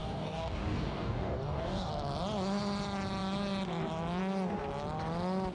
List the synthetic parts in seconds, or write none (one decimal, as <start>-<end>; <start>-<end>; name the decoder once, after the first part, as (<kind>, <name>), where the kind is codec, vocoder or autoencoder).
0.0-1.9 (codec, DAC)